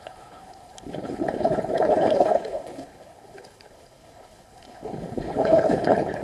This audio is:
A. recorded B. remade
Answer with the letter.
B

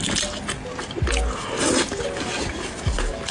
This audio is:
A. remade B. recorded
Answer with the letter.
B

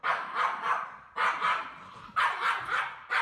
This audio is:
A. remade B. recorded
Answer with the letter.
B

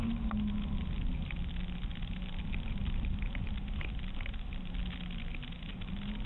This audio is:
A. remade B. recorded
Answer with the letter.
B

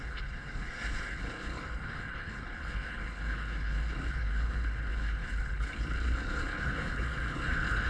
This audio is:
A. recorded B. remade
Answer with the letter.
B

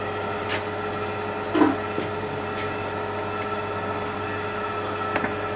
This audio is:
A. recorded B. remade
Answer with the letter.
A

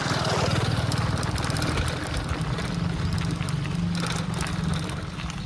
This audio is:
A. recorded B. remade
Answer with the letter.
A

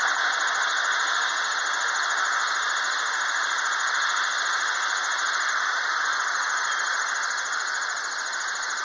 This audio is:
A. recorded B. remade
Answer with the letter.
A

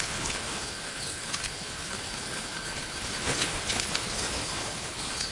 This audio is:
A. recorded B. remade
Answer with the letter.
B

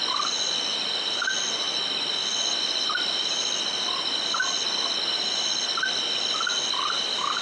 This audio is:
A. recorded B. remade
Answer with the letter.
A